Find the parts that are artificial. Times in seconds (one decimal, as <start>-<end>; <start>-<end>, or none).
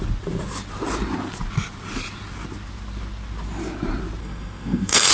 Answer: 4.2-5.1